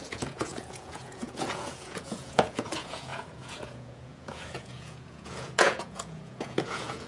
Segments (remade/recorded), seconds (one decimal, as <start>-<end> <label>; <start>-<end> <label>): 0.0-7.1 remade